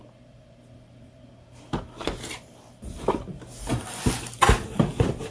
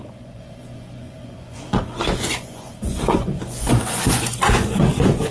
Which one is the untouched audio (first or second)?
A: first